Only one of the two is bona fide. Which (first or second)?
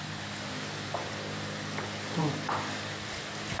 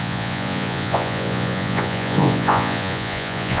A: first